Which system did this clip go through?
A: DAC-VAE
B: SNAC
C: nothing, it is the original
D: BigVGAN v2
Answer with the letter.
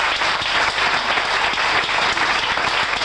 C